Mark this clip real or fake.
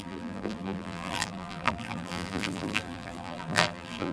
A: fake